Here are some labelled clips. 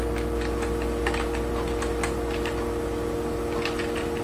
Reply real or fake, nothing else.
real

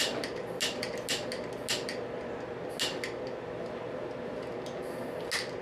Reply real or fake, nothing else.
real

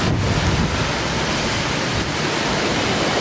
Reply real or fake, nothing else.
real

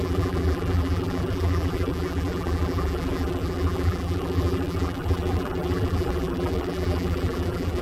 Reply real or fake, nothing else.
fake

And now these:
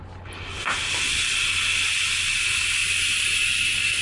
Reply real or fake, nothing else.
real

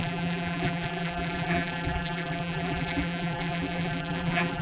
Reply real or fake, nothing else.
fake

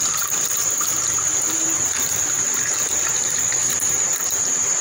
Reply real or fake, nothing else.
fake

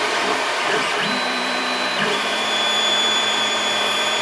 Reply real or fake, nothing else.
fake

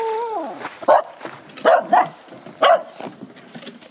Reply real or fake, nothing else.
real